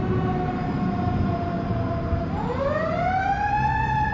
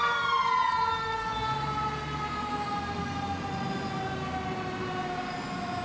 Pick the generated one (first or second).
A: first